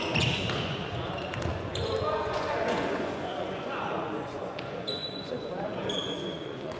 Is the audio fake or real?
fake